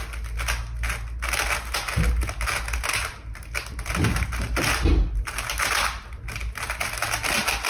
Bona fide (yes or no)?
yes